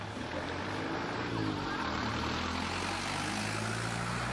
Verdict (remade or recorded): recorded